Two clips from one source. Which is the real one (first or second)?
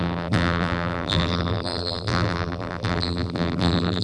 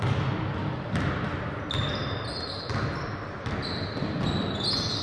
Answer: second